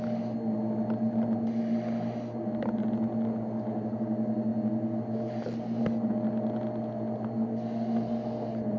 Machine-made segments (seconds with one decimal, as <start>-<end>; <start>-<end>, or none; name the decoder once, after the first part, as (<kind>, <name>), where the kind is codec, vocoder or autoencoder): none